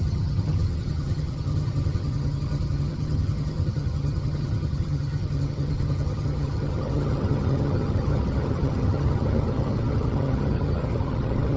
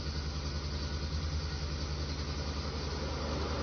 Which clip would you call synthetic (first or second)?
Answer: first